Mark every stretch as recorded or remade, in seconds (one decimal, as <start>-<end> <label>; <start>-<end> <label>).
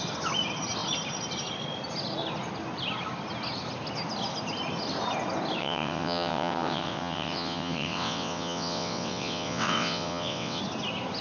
0.0-5.6 recorded; 5.6-10.6 remade; 10.6-11.2 recorded